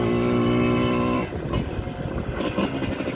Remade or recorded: recorded